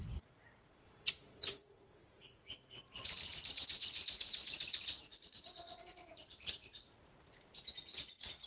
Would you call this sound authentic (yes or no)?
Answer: no